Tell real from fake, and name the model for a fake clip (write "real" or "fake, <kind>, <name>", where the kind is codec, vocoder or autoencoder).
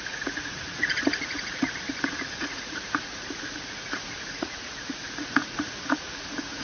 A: fake, vocoder, Vocos